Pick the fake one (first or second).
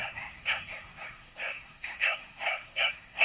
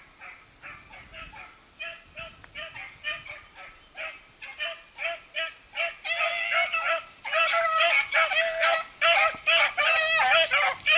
first